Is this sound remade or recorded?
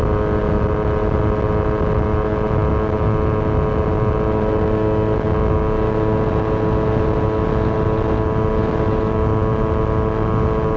recorded